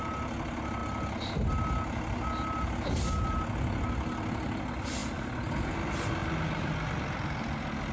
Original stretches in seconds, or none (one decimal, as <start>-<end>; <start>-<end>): 0.0-7.9